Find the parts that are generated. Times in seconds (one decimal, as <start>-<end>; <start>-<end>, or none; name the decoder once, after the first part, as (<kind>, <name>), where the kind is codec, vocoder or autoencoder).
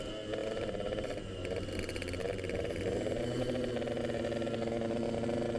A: 0.4-3.7 (vocoder, BigVGAN v2)